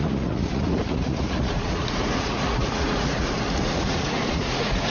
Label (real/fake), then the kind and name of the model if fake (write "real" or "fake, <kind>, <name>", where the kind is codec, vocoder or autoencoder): fake, vocoder, Vocos